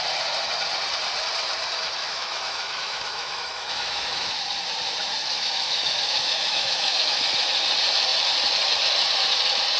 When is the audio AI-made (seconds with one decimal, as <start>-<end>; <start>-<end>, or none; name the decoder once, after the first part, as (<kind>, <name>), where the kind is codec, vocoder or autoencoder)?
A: 2.0-4.4 (autoencoder, DAC-VAE); 5.2-7.2